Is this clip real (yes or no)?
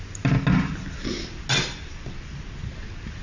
yes